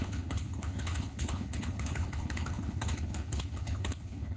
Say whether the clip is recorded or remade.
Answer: remade